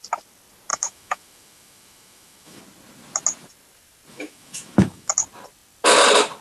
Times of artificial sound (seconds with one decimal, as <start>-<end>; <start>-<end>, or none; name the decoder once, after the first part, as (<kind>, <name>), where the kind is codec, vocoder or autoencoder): 0.7-2.6 (autoencoder, DAC-VAE); 4.1-5.1